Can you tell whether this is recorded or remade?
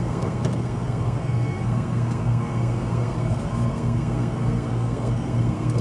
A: remade